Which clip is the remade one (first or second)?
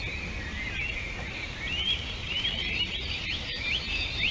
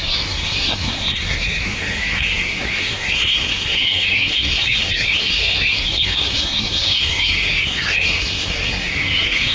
second